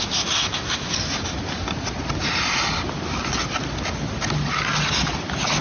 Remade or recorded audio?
recorded